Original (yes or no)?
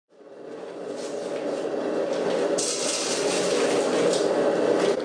yes